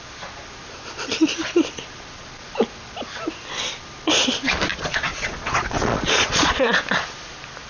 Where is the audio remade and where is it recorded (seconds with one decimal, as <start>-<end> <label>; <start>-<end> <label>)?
0.0-4.7 recorded; 4.7-6.8 remade; 6.8-7.7 recorded